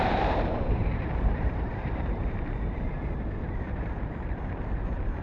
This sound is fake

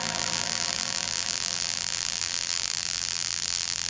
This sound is fake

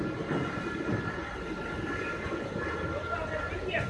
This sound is real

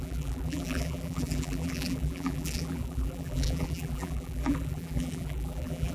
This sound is fake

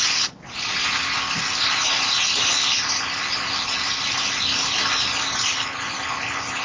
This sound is real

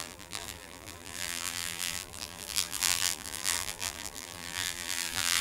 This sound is fake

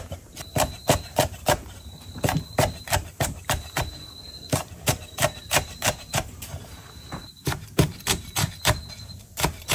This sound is fake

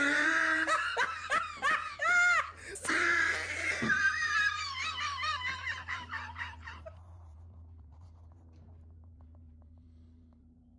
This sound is fake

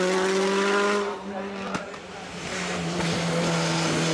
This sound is real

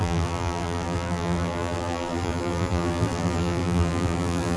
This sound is fake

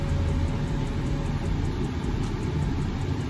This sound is real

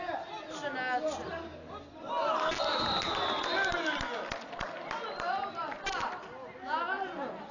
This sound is real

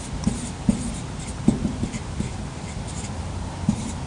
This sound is fake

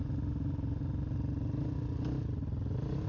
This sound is real